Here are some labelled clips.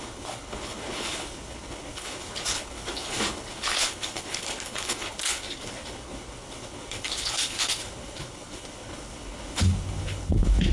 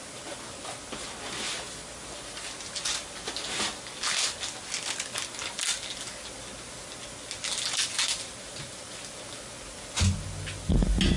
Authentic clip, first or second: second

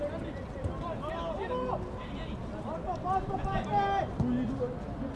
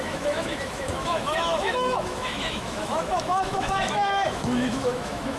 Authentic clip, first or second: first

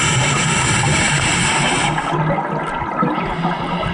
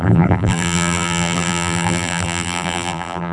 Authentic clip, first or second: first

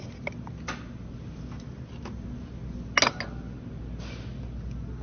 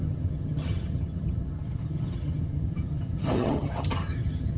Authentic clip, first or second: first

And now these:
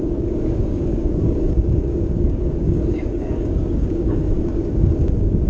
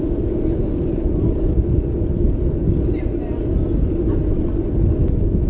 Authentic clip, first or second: second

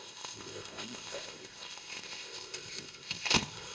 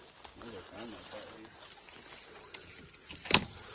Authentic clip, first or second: second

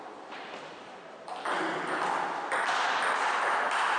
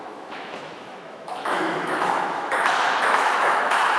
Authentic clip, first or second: first